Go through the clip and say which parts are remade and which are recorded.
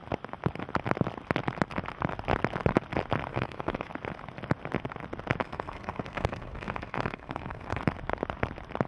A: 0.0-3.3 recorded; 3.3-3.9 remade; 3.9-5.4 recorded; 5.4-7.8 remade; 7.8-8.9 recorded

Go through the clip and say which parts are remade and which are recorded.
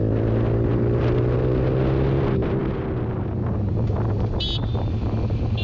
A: 0.0-5.6 recorded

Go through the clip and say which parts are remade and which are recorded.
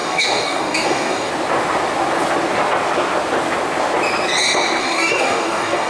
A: 0.0-1.3 remade; 1.3-4.8 recorded; 4.8-5.9 remade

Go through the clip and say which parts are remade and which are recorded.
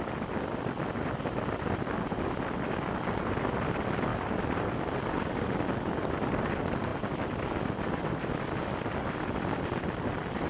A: 0.0-10.5 recorded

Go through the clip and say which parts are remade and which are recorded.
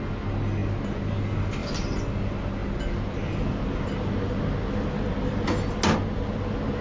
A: 0.0-6.8 recorded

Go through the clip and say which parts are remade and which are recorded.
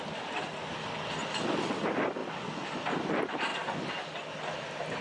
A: 0.0-5.0 recorded